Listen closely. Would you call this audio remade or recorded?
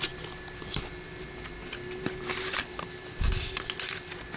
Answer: recorded